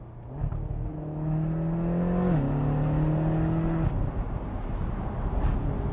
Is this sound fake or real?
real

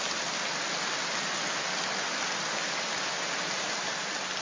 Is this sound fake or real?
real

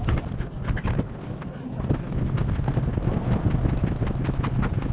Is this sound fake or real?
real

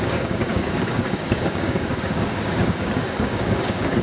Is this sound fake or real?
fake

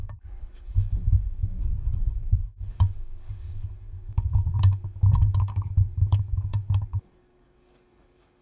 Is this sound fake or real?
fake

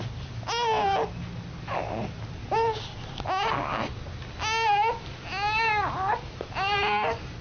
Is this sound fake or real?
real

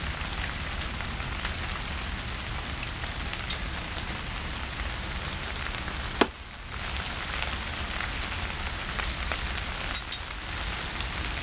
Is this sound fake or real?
real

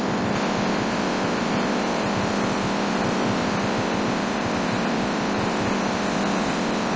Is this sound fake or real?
real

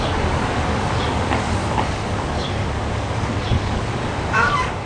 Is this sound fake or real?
fake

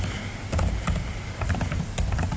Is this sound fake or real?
real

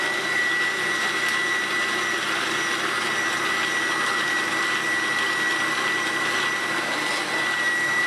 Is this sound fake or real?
real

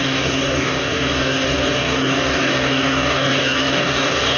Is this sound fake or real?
fake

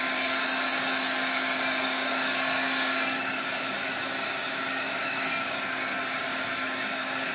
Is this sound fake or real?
fake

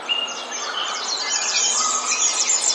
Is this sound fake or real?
real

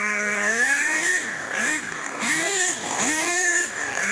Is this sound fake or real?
fake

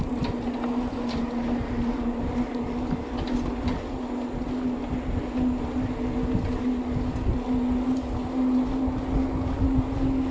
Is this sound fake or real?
real